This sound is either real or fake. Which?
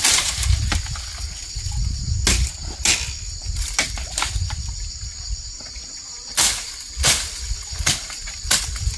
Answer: real